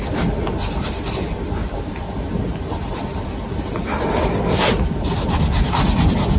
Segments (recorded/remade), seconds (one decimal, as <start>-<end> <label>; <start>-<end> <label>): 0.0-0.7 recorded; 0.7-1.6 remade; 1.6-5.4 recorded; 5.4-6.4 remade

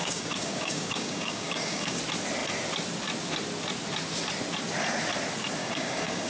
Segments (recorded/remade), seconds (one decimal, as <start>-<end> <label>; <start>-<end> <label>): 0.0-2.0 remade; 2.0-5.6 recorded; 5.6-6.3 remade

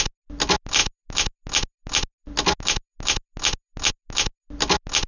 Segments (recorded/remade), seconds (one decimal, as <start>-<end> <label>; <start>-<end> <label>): 0.0-5.1 recorded